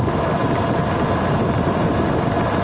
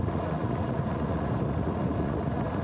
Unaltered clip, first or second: first